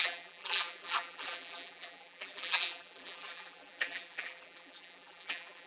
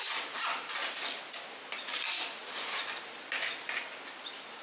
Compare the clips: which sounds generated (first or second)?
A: first